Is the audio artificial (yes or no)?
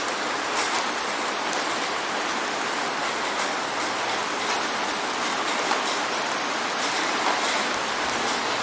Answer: no